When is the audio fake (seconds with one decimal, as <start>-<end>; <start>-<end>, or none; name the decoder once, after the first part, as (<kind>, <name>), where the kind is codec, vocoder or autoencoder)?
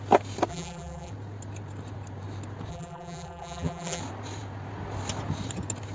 0.5-1.1 (vocoder, BigVGAN v2); 2.7-4.0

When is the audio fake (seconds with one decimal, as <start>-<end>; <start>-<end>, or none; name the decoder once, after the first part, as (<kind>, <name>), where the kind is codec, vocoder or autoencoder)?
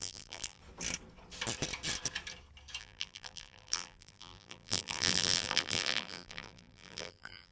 0.0-0.6 (vocoder, BigVGAN v2); 2.8-7.5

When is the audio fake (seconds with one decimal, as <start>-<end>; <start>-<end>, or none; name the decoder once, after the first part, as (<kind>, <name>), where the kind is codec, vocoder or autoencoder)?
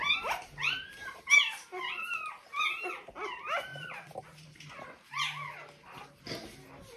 none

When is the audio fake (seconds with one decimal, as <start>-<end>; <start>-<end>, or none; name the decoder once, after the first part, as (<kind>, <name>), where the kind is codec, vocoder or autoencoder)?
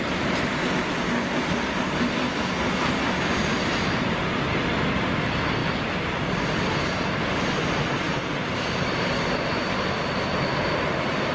none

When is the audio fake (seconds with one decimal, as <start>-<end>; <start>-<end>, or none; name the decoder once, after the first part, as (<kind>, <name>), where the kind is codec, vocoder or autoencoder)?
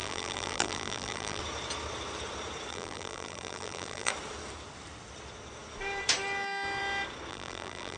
0.0-1.4 (vocoder, BigVGAN v2); 2.7-4.1; 7.3-8.0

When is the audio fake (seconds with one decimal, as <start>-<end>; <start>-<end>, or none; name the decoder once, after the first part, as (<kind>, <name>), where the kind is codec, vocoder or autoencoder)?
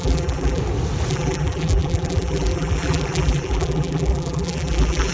0.0-0.6 (vocoder, BigVGAN v2); 1.1-5.1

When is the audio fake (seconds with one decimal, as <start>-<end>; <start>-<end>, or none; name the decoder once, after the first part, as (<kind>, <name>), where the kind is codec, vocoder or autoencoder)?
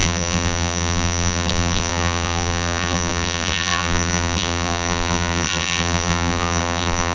0.0-7.1 (vocoder, BigVGAN v2)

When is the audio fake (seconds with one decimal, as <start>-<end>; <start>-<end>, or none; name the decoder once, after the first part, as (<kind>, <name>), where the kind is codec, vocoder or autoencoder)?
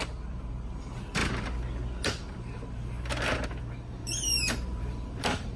0.0-1.2 (vocoder, BigVGAN v2); 2.2-5.6